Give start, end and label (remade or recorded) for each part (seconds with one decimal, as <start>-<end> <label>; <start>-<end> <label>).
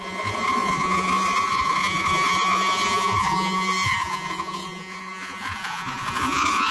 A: 0.0-6.7 remade